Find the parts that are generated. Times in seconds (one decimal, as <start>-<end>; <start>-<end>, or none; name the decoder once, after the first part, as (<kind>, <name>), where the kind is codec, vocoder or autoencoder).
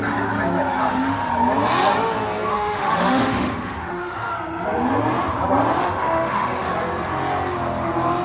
0.8-1.3 (autoencoder, DAC-VAE); 2.5-4.3; 5.8-6.7